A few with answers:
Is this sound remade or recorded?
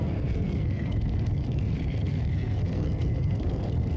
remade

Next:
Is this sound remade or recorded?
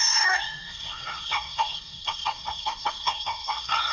remade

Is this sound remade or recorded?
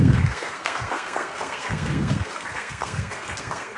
remade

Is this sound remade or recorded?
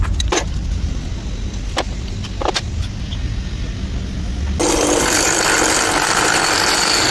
recorded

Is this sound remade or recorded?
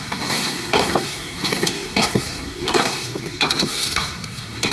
remade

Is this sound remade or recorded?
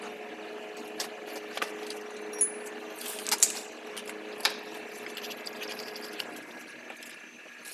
recorded